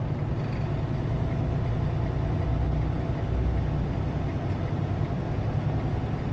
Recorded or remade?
recorded